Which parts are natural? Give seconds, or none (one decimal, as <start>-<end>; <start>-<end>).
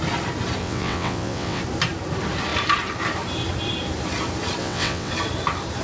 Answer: 0.0-0.6; 1.6-4.6; 5.1-5.8